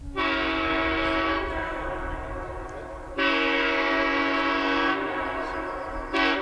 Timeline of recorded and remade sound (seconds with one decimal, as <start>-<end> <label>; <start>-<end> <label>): 0.0-1.3 recorded; 1.3-1.9 remade; 1.9-6.4 recorded